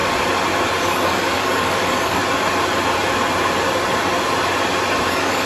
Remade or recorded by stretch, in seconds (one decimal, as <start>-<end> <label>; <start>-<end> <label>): 0.0-0.8 recorded; 0.8-2.2 remade; 2.2-5.1 recorded; 5.1-5.5 remade